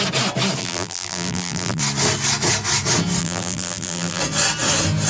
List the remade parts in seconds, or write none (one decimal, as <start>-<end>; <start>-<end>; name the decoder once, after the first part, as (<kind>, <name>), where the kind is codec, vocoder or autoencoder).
0.6-1.8 (vocoder, BigVGAN v2); 3.2-4.2